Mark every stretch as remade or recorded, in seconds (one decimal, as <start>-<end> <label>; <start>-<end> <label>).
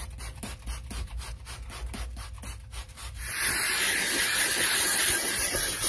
0.0-5.9 recorded